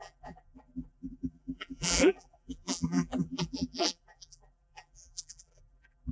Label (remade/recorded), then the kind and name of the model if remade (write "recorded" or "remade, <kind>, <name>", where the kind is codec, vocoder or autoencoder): remade, vocoder, BigVGAN v2